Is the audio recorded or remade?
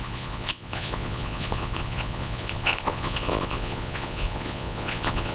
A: remade